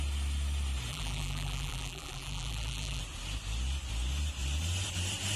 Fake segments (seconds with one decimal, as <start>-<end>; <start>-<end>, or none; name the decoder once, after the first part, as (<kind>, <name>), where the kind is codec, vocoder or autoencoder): 0.9-3.0 (vocoder, BigVGAN v2)